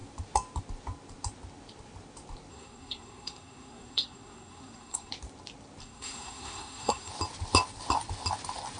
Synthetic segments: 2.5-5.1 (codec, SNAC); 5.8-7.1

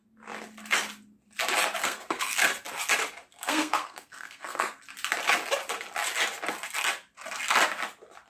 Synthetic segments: 1.8-2.5 (codec, SNAC); 3.3-4.8

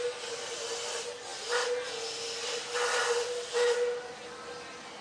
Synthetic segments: none

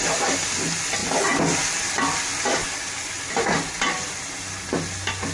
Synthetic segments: none